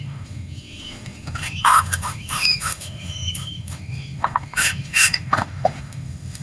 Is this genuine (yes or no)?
no